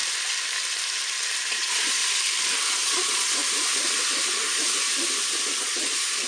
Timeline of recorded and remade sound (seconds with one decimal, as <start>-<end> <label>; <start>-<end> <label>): 0.0-1.5 recorded; 1.5-2.0 remade; 2.0-2.7 recorded; 2.7-3.4 remade; 3.4-5.4 recorded; 5.4-6.3 remade